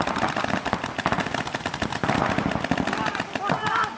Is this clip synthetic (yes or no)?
no